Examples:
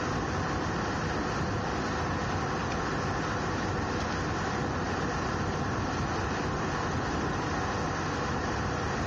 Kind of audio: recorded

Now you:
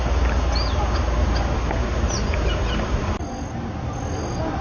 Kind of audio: recorded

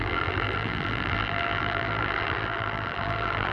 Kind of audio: remade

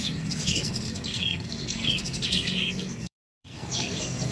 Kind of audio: remade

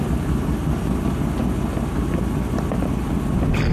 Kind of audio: recorded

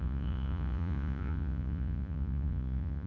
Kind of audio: remade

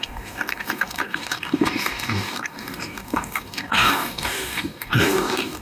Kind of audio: remade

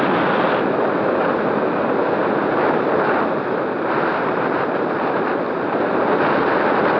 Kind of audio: recorded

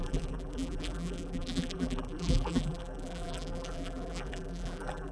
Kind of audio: remade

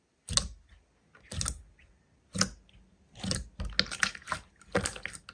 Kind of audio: recorded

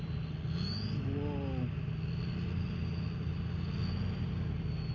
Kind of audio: recorded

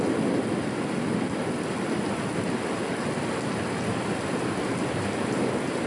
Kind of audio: recorded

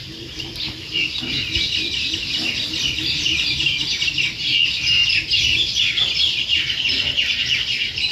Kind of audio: recorded